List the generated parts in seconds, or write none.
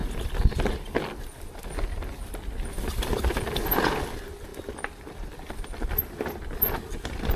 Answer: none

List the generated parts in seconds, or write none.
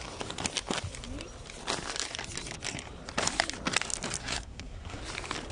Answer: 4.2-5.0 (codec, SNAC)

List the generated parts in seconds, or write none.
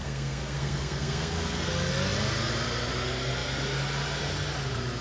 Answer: 0.0-1.7 (codec, SNAC)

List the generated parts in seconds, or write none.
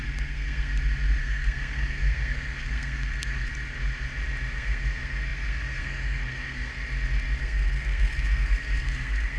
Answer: 0.0-0.7 (codec, SNAC); 1.2-3.5; 4.5-6.7; 7.4-9.4